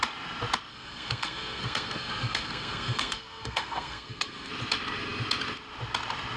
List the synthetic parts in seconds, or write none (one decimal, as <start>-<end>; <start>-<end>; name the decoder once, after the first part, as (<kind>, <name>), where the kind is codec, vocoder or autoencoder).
0.7-4.5 (codec, SNAC)